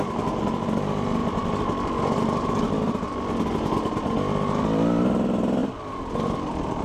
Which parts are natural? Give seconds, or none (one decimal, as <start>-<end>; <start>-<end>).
0.0-6.8